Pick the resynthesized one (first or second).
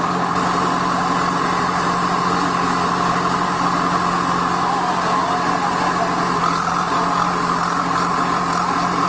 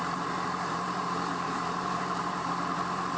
second